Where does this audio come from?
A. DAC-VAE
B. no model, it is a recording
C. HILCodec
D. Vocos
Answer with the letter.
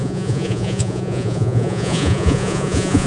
D